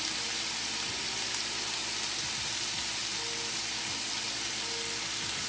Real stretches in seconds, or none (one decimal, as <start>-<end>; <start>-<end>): 0.0-5.5